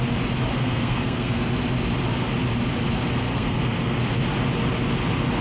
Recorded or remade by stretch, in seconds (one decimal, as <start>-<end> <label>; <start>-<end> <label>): 0.0-0.5 recorded; 0.5-1.4 remade; 1.4-3.3 recorded; 3.3-4.0 remade; 4.0-5.4 recorded